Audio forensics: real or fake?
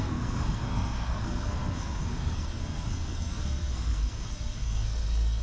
fake